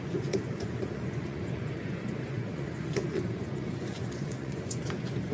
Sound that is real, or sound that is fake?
fake